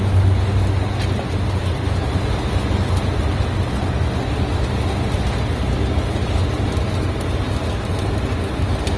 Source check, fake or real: real